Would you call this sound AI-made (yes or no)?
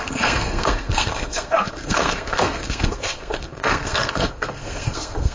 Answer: yes